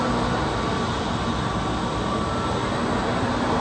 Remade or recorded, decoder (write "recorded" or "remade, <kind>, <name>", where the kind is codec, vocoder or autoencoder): recorded